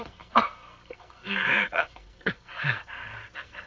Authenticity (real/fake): fake